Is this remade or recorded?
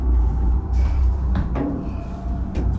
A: remade